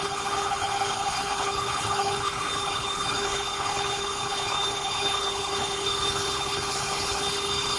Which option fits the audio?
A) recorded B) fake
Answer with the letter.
B